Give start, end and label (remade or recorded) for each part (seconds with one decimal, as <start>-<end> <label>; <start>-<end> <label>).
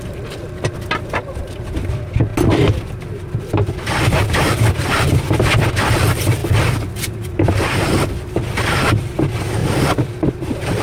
0.0-2.3 remade; 2.3-4.7 recorded; 4.7-9.6 remade; 9.6-10.3 recorded; 10.3-10.8 remade